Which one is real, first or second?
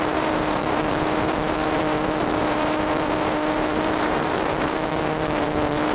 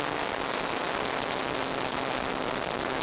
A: second